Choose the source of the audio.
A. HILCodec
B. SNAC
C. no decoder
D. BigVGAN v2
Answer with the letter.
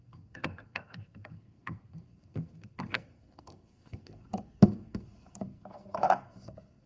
B